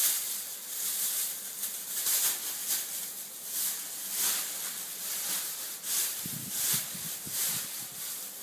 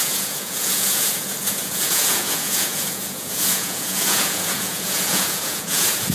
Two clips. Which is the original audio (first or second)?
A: first